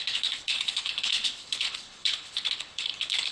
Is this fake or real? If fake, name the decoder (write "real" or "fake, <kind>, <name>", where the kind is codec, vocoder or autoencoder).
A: fake, codec, HILCodec